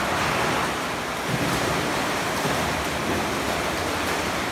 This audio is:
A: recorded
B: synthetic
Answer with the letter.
A